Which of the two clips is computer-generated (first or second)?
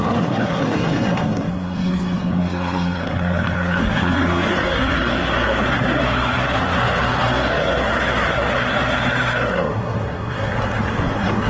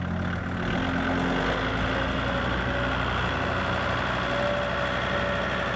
first